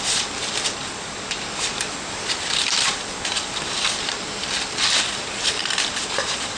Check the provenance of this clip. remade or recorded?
remade